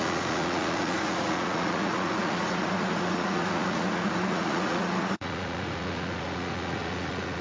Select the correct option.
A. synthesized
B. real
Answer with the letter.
A